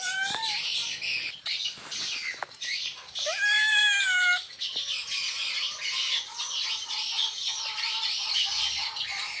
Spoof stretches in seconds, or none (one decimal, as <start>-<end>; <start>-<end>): 0.0-0.7; 2.6-3.8; 4.6-5.2; 7.7-9.4